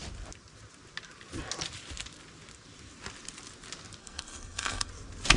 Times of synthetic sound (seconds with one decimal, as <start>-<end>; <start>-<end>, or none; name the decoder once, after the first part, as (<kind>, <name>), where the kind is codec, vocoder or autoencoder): 4.0-4.9 (codec, SNAC)